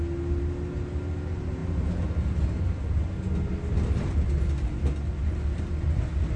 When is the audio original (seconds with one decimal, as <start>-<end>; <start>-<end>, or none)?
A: 0.0-6.4